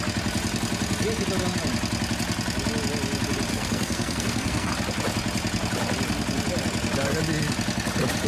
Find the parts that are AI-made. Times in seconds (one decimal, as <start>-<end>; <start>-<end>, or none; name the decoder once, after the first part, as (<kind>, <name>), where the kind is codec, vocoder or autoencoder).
3.5-4.7 (codec, SNAC)